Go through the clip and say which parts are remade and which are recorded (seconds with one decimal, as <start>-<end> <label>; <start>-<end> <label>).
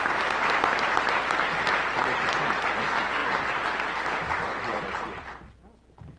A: 0.0-6.2 recorded